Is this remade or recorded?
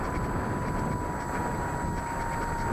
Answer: recorded